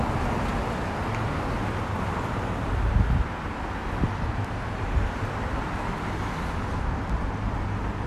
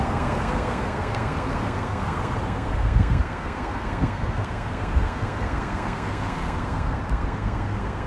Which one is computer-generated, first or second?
second